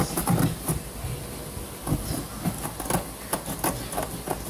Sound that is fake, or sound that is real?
real